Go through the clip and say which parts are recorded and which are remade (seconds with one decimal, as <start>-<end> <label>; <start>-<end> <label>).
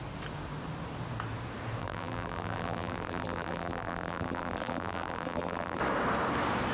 0.0-1.8 recorded; 1.8-5.8 remade; 5.8-6.7 recorded